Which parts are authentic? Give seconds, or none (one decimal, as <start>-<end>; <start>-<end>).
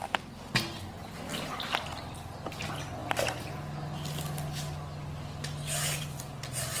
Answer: 0.0-6.8